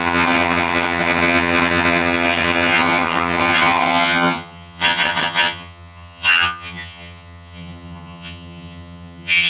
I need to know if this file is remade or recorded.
remade